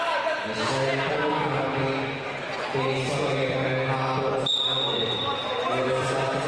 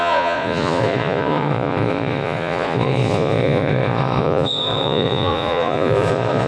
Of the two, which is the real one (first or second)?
first